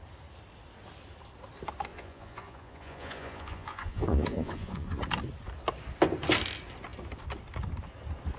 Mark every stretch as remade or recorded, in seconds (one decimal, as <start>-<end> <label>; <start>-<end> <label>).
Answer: 0.0-1.9 recorded; 1.9-5.0 remade; 5.0-8.4 recorded